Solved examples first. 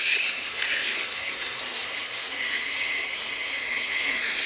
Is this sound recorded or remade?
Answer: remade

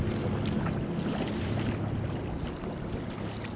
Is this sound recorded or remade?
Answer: recorded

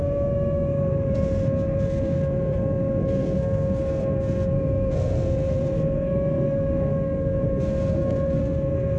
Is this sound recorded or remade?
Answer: remade